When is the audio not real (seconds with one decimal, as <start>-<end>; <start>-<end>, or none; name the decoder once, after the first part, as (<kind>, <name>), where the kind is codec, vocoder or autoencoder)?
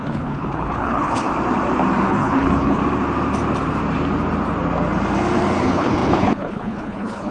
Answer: 0.0-1.3 (codec, HILCodec); 2.1-2.8; 5.6-7.3